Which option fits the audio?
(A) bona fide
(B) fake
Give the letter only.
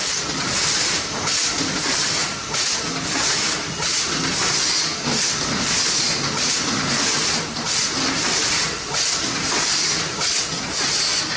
A